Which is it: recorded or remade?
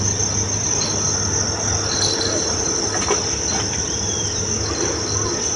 recorded